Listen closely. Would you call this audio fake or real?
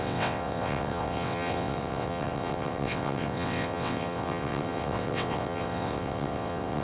fake